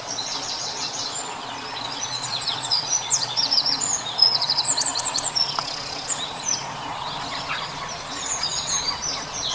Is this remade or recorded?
remade